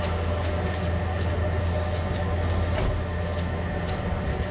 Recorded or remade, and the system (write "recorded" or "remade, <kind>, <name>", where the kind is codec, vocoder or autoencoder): recorded